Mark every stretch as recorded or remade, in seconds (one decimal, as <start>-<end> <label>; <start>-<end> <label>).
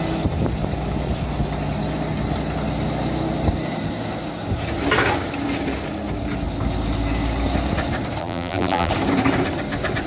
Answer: 0.0-8.2 recorded; 8.2-8.9 remade; 8.9-10.1 recorded